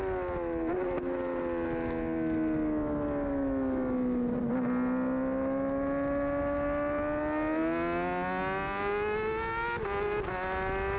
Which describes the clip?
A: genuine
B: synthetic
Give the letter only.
A